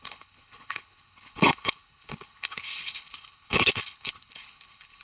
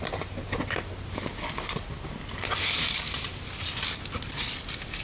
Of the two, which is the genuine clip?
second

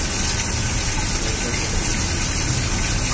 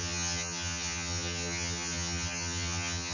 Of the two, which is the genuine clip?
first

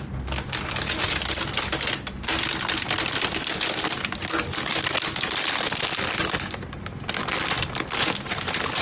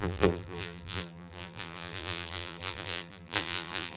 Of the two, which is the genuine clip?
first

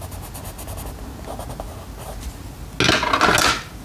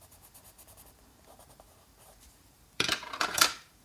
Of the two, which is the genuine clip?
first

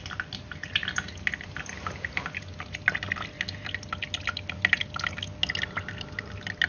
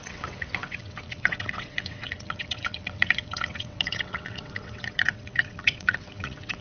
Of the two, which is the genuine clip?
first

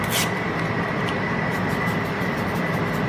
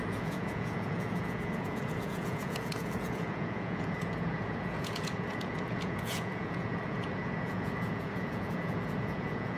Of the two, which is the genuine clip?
first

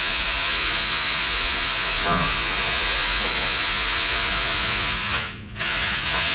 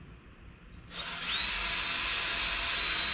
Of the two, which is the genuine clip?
second